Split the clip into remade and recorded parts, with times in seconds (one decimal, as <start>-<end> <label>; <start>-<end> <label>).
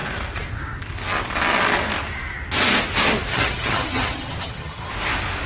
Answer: 0.0-3.3 recorded; 3.3-4.9 remade; 4.9-5.5 recorded